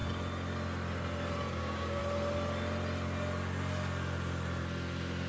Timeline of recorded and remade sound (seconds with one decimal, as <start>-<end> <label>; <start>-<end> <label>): 0.0-1.5 recorded; 1.5-2.0 remade; 2.0-5.3 recorded